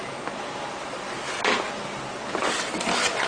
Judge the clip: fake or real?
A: real